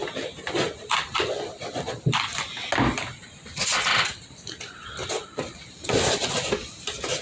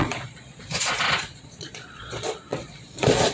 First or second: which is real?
first